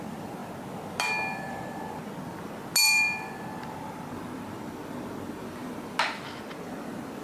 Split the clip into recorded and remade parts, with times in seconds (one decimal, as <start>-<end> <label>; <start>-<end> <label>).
0.0-7.2 recorded